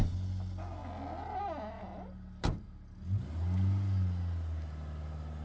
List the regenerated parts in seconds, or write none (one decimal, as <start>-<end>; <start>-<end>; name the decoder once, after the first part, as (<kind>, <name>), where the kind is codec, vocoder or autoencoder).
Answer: none